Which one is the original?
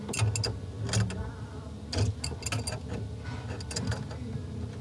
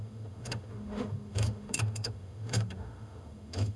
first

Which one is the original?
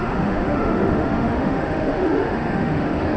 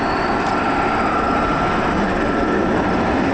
second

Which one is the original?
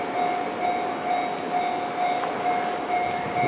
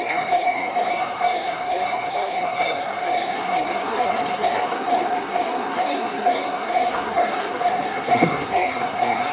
first